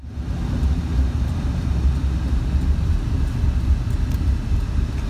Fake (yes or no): no